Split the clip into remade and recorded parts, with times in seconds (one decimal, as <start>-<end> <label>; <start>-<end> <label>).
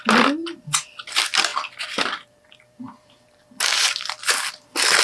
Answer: 0.0-5.0 recorded